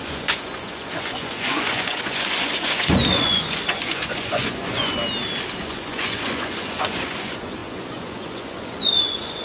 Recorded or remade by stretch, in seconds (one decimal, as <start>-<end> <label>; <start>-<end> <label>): 0.0-4.9 remade; 4.9-5.6 recorded; 5.6-9.4 remade